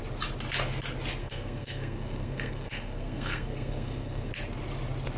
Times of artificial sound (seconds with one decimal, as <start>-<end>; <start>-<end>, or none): 1.2-4.3